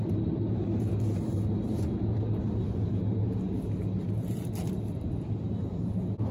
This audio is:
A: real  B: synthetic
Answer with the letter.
A